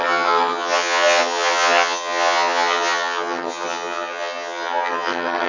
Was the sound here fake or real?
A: fake